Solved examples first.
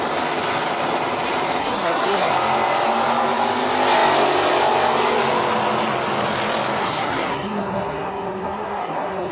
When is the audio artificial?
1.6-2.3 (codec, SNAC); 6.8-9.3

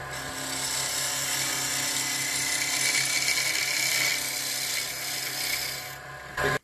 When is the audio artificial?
none

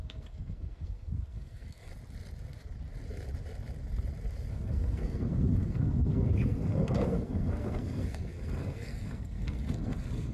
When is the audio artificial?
0.0-1.9 (codec, SNAC); 4.5-10.3

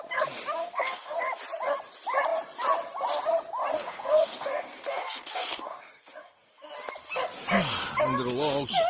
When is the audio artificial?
0.6-1.2 (codec, SNAC); 3.7-6.7

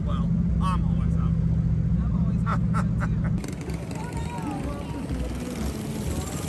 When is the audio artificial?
none